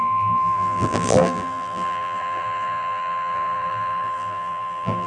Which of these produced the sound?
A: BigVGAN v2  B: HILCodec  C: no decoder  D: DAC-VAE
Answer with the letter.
A